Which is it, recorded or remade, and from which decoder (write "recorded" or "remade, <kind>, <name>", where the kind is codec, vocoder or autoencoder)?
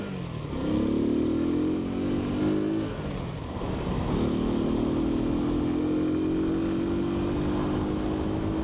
recorded